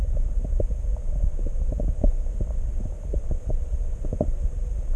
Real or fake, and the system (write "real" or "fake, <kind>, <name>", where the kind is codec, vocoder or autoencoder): real